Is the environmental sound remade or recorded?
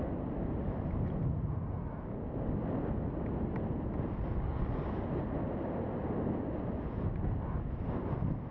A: recorded